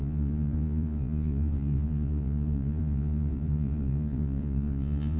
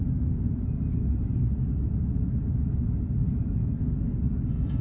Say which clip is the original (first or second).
second